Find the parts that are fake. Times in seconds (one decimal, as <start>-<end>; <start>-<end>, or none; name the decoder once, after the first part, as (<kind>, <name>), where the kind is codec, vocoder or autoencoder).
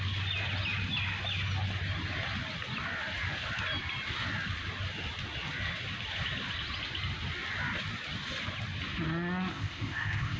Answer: 9.5-10.4 (codec, ZipCodec)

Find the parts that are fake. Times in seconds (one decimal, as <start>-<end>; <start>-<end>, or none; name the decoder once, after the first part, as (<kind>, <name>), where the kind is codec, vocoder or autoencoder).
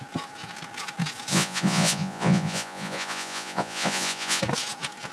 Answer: 1.3-4.4 (vocoder, Vocos)